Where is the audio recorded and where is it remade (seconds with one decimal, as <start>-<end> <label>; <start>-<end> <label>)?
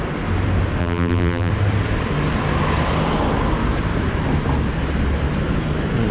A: 0.0-0.8 recorded; 0.8-1.5 remade; 1.5-6.1 recorded